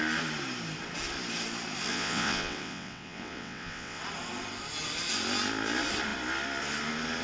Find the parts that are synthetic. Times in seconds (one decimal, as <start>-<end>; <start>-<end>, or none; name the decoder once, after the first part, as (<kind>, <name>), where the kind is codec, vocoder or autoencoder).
1.9-4.0 (vocoder, WaveNeXt)